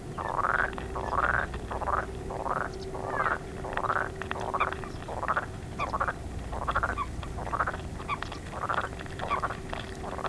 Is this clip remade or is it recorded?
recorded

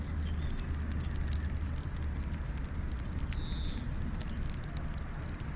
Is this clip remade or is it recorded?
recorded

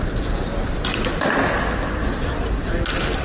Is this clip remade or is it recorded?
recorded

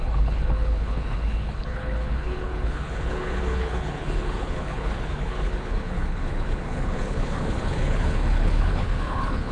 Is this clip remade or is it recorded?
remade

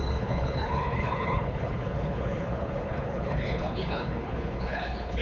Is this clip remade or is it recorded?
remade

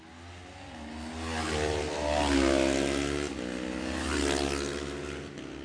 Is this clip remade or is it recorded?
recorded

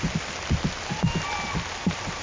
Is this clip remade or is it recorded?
recorded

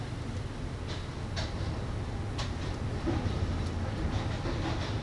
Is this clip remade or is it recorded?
recorded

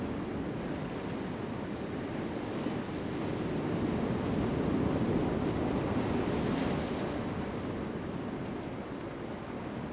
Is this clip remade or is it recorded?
recorded